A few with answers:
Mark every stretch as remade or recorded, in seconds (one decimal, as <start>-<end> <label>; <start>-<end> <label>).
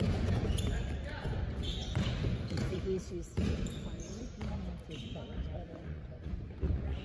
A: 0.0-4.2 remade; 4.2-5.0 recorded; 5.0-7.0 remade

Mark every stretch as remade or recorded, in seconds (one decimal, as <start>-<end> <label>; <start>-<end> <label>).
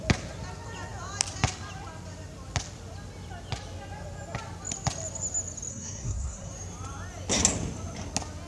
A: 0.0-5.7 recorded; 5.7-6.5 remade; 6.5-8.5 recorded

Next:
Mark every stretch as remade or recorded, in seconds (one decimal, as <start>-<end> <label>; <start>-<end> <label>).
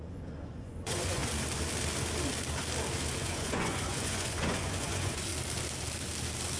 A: 0.0-1.2 remade; 1.2-3.2 recorded; 3.2-5.3 remade; 5.3-6.6 recorded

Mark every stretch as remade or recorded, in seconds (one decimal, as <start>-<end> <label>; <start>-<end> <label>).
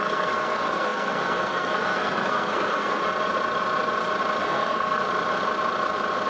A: 0.0-3.0 remade; 3.0-4.4 recorded; 4.4-5.0 remade; 5.0-6.3 recorded